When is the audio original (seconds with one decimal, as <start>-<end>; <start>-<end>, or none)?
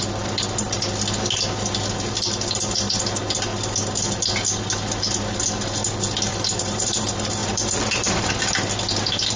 0.0-6.3; 7.0-7.4; 8.3-9.4